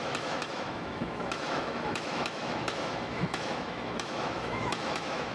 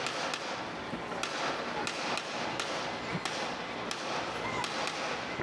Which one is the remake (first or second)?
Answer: first